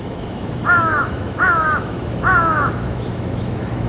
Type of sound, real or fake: fake